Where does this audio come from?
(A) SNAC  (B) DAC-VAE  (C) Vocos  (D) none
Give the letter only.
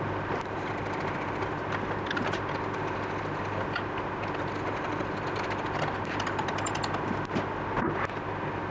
D